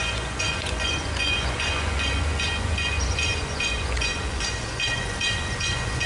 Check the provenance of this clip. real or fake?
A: fake